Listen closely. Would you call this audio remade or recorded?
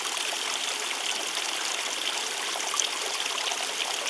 recorded